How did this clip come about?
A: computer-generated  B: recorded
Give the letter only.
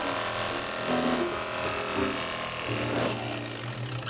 B